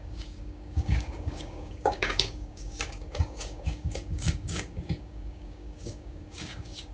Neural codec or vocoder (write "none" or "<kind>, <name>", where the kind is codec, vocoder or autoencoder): codec, DAC